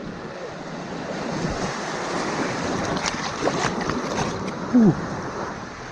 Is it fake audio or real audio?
real